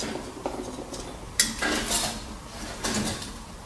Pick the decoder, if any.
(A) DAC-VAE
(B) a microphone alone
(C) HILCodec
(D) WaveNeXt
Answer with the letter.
B